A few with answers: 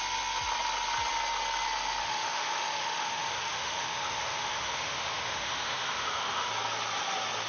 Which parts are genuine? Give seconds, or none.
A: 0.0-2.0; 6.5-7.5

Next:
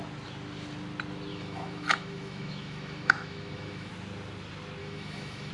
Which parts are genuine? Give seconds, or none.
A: 0.0-1.3; 3.9-4.8